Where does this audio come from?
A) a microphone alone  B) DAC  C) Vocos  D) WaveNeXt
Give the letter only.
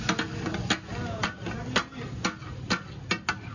A